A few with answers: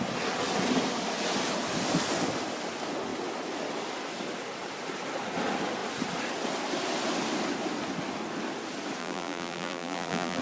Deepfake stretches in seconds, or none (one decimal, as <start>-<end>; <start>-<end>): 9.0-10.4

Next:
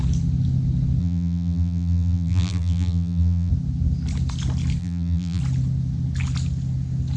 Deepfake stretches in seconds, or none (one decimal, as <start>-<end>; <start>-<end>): 1.0-3.5; 4.8-5.4

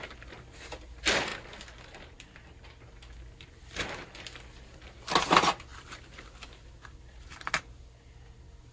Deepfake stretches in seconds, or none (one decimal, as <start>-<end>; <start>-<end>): 5.7-7.6

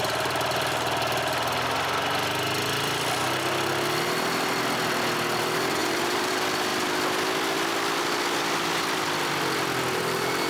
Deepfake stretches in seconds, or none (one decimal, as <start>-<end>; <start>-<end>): 5.8-6.3